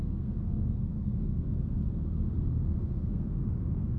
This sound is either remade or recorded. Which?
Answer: remade